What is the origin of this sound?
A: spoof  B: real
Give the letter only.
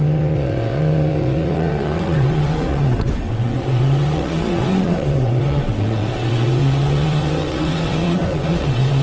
A